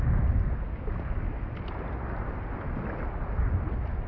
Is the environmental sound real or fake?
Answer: real